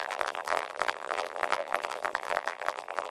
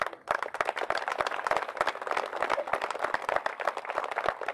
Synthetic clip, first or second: first